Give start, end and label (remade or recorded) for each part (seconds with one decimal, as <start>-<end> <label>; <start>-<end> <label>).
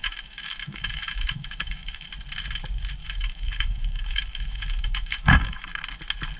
0.0-2.1 remade; 2.1-3.0 recorded; 3.0-5.7 remade; 5.7-6.4 recorded